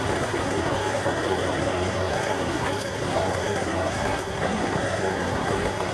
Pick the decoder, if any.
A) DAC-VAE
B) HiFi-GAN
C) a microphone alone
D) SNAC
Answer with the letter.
D